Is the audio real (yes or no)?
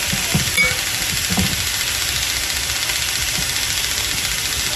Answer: yes